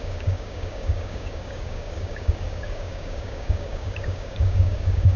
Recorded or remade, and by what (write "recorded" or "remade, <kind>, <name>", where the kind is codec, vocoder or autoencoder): remade, codec, DAC